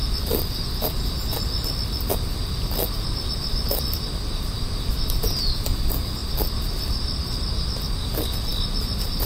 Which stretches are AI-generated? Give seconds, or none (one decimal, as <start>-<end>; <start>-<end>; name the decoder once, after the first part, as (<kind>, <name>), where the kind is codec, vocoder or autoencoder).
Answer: none